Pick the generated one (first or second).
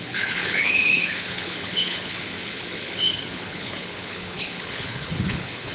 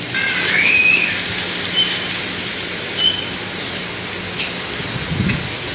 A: first